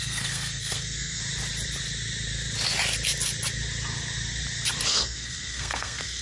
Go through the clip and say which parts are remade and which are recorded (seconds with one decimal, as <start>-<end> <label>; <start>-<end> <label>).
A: 0.0-1.2 remade; 1.2-4.9 recorded; 4.9-6.2 remade